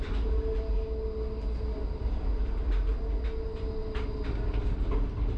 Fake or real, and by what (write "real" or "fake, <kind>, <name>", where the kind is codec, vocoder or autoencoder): real